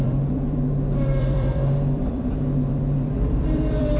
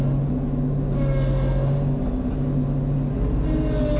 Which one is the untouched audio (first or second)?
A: second